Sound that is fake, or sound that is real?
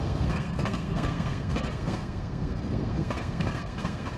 fake